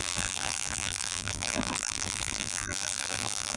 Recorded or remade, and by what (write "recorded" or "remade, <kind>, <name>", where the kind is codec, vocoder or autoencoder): remade, vocoder, BigVGAN v2